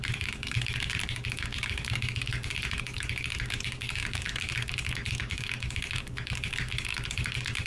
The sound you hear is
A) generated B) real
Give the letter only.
A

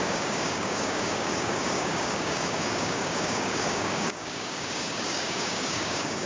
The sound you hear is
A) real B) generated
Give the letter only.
B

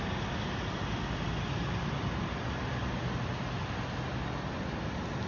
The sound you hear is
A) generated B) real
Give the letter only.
B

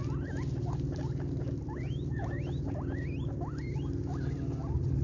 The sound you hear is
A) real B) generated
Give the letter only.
A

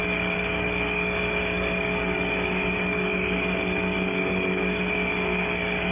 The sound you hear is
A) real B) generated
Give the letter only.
B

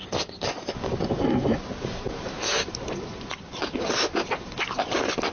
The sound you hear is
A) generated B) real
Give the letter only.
B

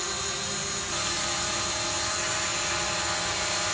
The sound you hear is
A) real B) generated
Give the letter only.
A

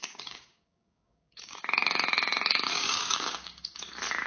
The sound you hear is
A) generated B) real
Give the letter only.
A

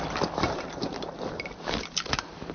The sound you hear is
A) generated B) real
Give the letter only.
B